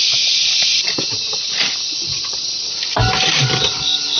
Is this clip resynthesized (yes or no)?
yes